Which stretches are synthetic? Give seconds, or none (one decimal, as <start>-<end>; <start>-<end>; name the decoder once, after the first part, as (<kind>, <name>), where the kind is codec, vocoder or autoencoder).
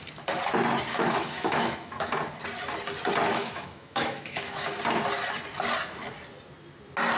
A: 0.9-2.1 (autoencoder, DAC-VAE); 3.3-4.8